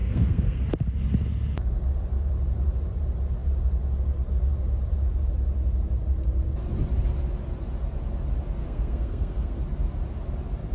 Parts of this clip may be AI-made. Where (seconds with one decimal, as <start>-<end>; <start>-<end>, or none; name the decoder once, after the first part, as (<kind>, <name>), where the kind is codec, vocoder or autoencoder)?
0.0-0.6 (codec, SNAC); 8.6-9.6